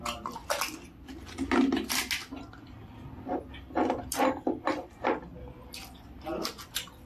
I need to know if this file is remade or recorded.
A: recorded